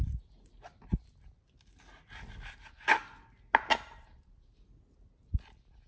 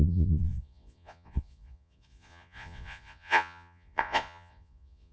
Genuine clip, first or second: first